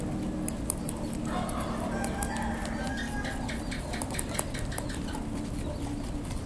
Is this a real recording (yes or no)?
yes